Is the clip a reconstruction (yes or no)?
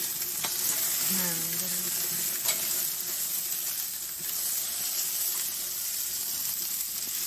no